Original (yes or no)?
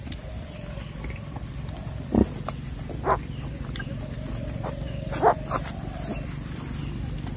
yes